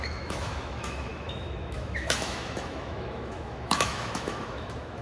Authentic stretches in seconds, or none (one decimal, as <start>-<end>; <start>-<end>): none